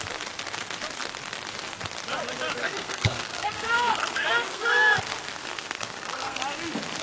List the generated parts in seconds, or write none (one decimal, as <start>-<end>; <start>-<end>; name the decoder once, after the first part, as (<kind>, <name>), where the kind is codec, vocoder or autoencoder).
2.6-5.0 (codec, SNAC); 5.4-6.4